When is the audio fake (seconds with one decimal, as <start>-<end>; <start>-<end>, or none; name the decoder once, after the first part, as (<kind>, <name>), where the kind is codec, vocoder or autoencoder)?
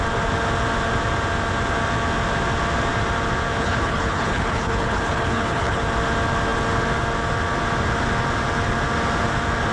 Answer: 3.6-5.8 (codec, HILCodec)